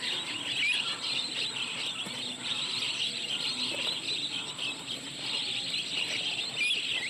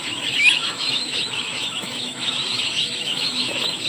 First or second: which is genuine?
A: first